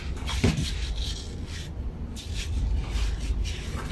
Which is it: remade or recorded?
recorded